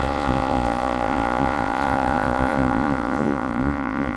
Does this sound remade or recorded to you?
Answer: remade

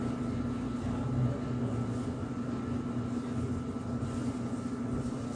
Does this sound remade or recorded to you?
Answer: recorded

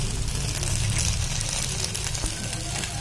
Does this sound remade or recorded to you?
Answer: recorded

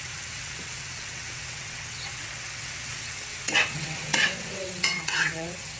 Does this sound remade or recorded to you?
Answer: remade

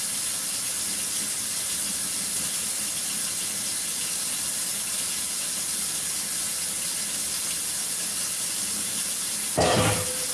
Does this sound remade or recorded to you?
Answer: recorded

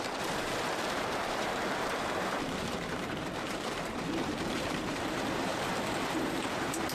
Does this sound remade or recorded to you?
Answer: remade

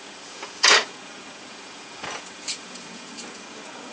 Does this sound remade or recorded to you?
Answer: remade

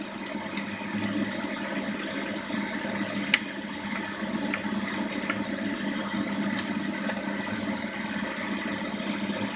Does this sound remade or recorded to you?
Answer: recorded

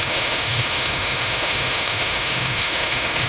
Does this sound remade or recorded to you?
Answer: remade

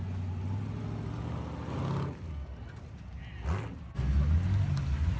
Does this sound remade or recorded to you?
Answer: recorded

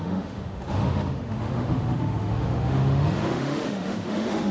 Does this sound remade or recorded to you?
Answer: remade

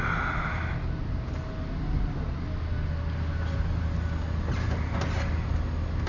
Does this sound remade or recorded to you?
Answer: recorded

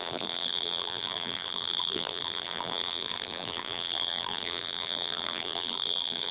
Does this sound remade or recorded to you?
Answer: remade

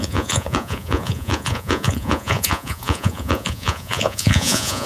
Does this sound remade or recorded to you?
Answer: remade